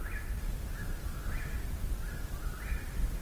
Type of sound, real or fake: real